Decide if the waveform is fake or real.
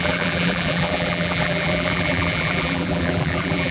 fake